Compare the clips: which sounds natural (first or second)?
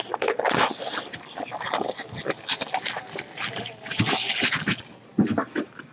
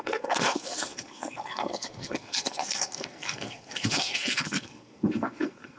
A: first